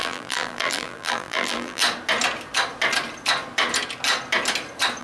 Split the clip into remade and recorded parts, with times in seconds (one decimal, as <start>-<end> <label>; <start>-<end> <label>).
0.0-1.8 remade; 1.8-5.0 recorded